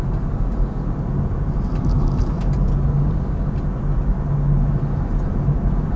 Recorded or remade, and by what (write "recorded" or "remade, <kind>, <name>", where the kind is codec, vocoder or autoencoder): recorded